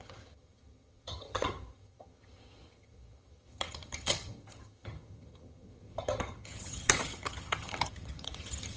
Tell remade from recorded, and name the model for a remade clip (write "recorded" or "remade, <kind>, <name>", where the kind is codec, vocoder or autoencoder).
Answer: remade, vocoder, HiFi-GAN